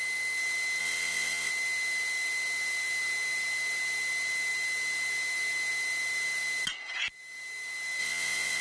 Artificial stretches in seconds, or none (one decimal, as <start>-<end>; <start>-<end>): 0.8-1.5; 8.0-8.6